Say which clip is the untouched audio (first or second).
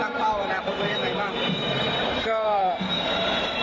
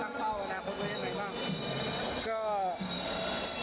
second